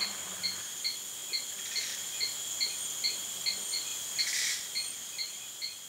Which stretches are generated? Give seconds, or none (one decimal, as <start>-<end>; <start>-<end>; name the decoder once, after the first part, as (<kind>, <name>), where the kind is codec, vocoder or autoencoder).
none